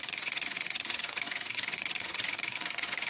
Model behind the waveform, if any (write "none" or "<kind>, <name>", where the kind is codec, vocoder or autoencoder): vocoder, Vocos